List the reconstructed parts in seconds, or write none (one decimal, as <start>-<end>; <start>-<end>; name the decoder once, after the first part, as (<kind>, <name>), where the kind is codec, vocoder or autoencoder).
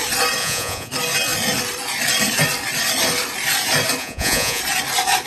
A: 0.4-0.9 (vocoder, Vocos); 4.0-4.6